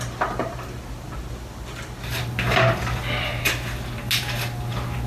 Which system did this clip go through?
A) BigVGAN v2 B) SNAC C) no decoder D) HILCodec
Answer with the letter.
C